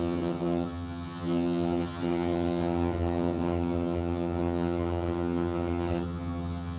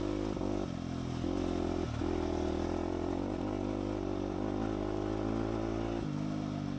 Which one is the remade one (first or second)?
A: first